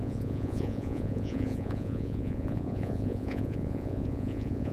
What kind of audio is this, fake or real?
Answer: fake